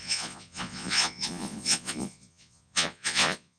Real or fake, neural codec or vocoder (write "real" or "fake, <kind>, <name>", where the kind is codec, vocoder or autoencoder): fake, vocoder, Vocos